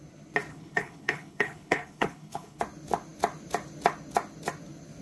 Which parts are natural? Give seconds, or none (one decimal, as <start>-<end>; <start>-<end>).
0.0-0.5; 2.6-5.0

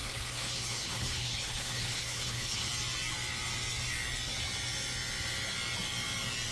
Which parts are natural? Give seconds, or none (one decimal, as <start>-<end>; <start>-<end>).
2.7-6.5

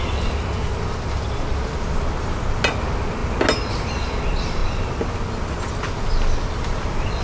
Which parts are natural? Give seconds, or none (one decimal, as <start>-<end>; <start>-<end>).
0.0-7.2

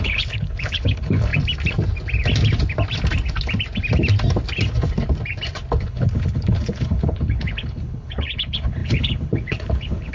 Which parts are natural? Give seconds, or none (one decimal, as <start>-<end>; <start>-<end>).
1.3-5.8

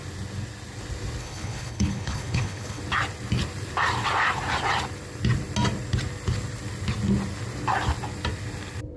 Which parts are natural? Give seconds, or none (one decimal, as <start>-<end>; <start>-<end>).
0.0-1.2; 2.8-9.0

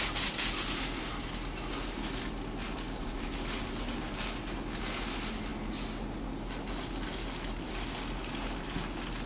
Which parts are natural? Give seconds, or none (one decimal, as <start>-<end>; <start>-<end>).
0.0-9.3

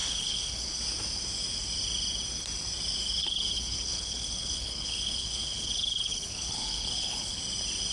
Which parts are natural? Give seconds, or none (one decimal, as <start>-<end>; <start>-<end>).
0.8-3.2; 7.4-7.9

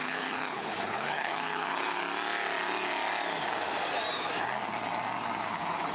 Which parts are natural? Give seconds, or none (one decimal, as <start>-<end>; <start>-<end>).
2.0-5.5